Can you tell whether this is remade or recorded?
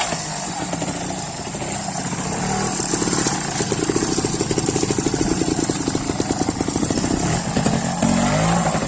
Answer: recorded